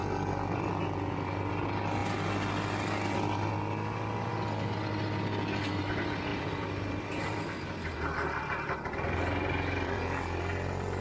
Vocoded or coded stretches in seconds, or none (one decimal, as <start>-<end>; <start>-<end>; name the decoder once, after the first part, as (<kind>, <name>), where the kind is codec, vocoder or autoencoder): 6.3-10.0 (vocoder, BigVGAN v2)